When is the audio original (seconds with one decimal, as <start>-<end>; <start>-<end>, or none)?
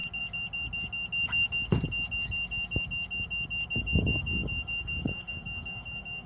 0.0-3.8